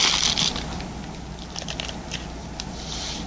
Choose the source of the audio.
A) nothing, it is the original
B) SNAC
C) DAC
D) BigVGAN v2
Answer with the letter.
A